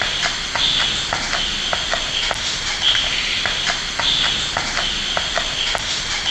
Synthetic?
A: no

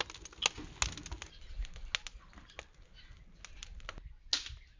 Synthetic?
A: no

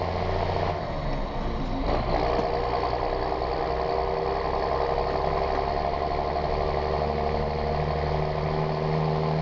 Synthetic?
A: no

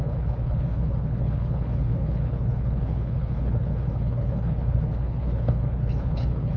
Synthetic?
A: yes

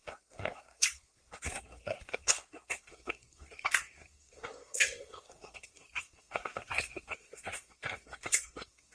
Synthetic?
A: yes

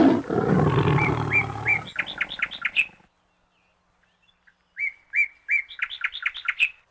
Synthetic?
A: no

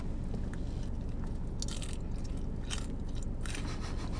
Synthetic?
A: no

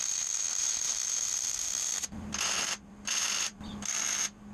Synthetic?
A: yes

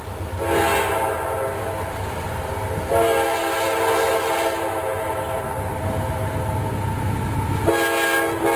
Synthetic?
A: no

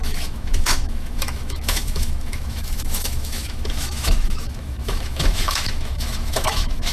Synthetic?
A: yes